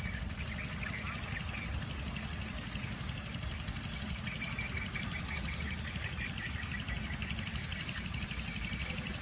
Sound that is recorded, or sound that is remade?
recorded